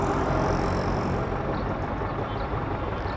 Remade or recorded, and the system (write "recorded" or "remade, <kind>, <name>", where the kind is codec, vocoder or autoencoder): recorded